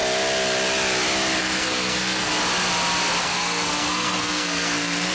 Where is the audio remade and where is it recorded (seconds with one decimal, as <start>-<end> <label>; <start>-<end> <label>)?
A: 0.0-1.4 recorded; 1.4-2.3 remade; 2.3-3.2 recorded; 3.2-5.1 remade